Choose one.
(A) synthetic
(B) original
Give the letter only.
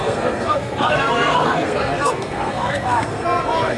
A